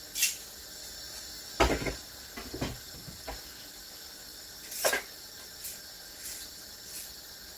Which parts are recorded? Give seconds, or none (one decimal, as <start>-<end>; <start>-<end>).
0.0-7.6